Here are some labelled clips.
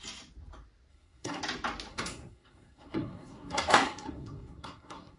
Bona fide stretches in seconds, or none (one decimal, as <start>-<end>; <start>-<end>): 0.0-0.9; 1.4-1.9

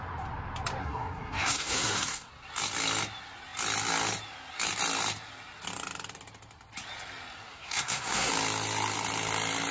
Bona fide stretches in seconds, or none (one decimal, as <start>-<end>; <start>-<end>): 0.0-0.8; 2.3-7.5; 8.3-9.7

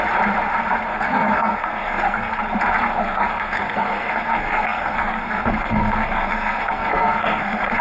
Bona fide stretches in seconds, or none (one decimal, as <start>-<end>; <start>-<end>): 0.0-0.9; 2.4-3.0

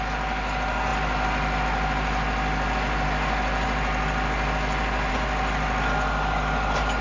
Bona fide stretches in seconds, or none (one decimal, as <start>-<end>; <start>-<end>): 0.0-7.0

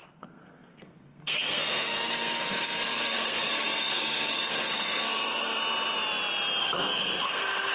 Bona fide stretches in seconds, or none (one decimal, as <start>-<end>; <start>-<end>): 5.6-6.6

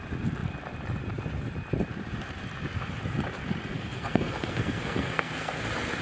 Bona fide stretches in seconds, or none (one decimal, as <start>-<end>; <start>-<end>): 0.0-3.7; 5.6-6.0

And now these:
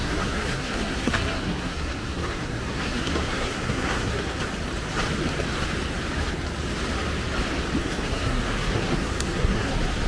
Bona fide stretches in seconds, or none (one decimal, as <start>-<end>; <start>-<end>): 4.4-7.8; 9.7-10.1